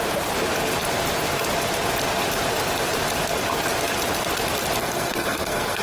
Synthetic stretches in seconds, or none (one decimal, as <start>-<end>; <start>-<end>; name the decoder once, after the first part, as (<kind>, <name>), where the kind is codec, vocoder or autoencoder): 4.8-5.8 (codec, SNAC)